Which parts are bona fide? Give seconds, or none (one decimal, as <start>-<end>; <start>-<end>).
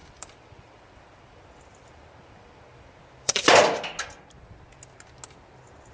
3.5-5.9